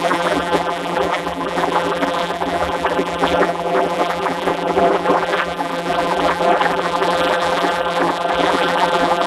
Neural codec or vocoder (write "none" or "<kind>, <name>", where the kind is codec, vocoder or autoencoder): vocoder, BigVGAN v2